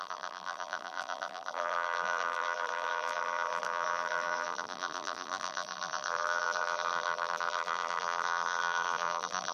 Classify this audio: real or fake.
fake